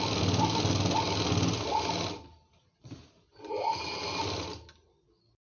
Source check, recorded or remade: recorded